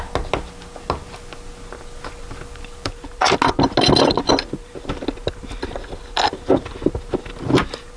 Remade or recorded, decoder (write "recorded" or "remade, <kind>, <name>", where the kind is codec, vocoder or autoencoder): recorded